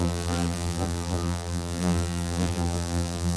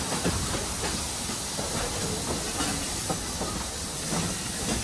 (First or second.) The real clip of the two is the second